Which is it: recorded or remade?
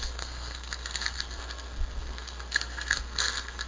remade